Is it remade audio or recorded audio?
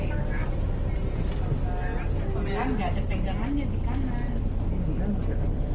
recorded